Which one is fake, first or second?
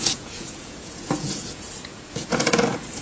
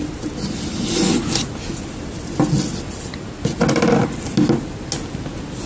first